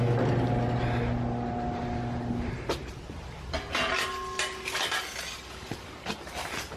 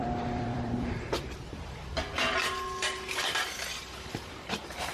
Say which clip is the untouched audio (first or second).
first